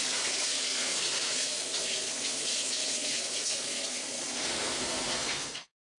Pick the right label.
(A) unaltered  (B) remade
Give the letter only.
B